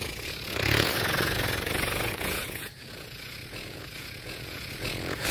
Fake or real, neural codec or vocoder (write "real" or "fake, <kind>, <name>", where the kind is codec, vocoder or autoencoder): fake, vocoder, Vocos